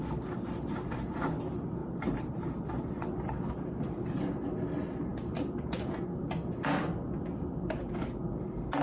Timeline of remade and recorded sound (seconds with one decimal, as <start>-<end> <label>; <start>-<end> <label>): 0.0-1.8 recorded; 1.8-2.9 remade; 2.9-8.8 recorded